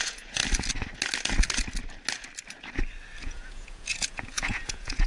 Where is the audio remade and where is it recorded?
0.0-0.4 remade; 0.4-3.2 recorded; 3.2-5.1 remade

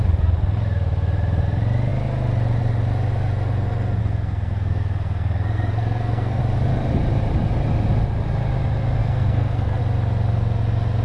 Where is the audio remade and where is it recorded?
0.0-4.0 recorded; 4.0-6.4 remade; 6.4-9.0 recorded; 9.0-9.8 remade; 9.8-11.0 recorded

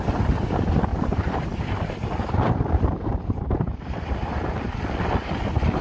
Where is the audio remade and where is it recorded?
0.0-0.9 recorded; 0.9-4.4 remade; 4.4-5.8 recorded

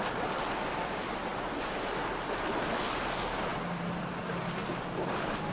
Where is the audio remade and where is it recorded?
0.0-5.5 recorded

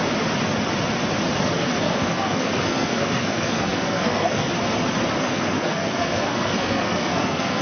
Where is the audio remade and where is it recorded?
0.0-1.4 recorded; 1.4-4.5 remade; 4.5-5.2 recorded; 5.2-7.6 remade